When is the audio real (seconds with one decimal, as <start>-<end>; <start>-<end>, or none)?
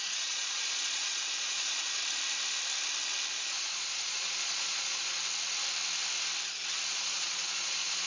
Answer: 2.0-3.3; 5.1-6.9